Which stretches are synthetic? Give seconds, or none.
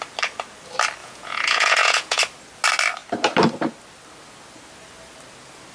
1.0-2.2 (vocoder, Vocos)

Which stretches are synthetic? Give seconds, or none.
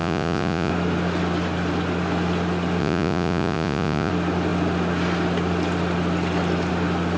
0.0-0.7 (vocoder, Vocos); 2.8-4.1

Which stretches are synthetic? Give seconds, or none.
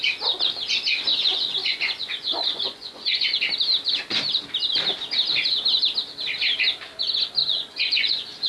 1.1-3.4 (vocoder, Vocos); 7.4-8.5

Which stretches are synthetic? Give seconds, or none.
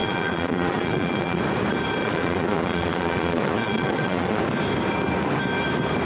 0.0-1.4 (vocoder, Vocos); 2.0-4.4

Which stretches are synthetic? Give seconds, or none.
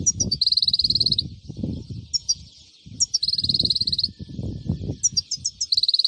2.2-2.7 (vocoder, Vocos)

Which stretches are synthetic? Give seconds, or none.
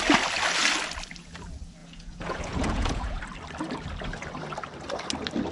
1.8-3.2 (vocoder, Vocos)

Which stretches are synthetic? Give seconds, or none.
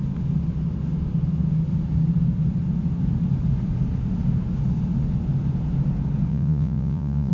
6.3-7.3 (vocoder, Vocos)